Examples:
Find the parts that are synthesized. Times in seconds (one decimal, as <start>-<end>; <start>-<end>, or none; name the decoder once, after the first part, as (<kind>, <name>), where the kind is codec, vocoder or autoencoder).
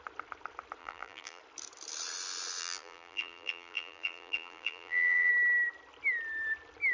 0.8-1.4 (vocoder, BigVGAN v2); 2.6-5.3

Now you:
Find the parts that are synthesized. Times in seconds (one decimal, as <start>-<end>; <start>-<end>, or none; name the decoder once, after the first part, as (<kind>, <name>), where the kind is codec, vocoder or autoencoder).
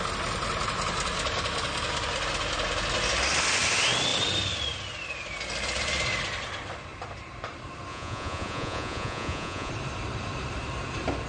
7.9-9.7 (vocoder, Vocos)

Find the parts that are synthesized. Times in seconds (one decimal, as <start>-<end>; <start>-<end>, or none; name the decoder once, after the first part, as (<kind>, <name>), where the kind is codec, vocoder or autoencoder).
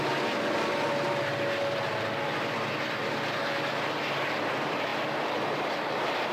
none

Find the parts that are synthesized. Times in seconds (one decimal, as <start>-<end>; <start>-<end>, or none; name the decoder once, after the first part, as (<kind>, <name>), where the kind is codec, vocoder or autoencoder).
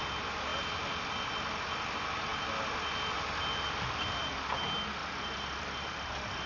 none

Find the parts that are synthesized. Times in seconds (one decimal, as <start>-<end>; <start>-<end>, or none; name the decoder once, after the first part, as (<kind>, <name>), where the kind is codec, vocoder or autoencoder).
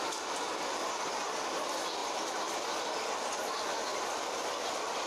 2.0-2.7 (vocoder, BigVGAN v2); 3.9-4.4